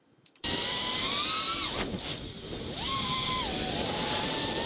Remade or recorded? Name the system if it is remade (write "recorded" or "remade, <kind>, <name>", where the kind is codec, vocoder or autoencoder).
remade, vocoder, BigVGAN v2